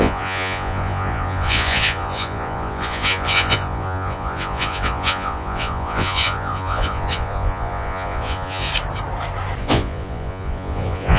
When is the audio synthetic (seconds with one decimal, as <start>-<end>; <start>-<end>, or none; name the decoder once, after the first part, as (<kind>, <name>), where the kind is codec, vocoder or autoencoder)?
0.0-8.7 (vocoder, Vocos); 9.6-11.2